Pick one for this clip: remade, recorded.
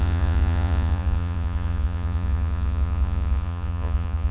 remade